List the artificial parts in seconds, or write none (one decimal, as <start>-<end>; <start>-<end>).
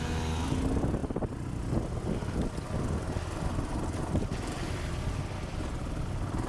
none